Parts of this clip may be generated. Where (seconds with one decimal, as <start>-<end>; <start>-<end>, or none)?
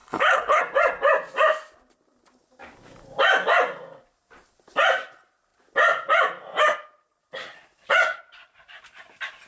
0.0-0.6